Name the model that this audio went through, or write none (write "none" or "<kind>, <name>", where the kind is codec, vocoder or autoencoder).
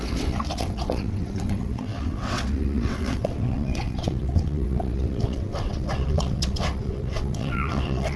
vocoder, WaveNeXt